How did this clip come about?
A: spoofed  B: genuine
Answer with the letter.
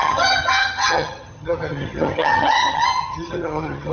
A